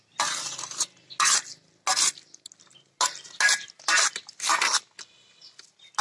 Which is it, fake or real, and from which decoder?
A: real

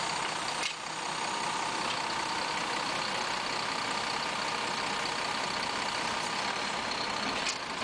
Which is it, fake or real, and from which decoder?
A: real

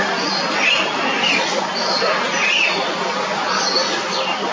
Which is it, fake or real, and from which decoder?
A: real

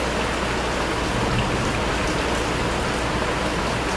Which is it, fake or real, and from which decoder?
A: real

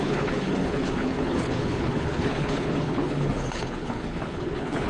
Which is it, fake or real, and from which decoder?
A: fake, codec, HILCodec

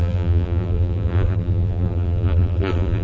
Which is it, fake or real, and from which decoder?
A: fake, vocoder, BigVGAN v2